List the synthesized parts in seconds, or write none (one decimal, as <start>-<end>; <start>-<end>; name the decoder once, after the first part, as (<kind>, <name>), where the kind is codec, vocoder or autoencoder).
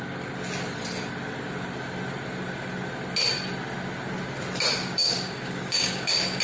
4.8-6.4 (codec, DAC)